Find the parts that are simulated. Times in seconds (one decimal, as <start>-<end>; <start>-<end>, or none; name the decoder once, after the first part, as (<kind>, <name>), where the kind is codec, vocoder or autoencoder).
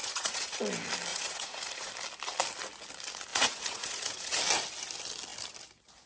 0.0-0.6 (vocoder, Vocos); 1.1-1.9; 3.3-4.4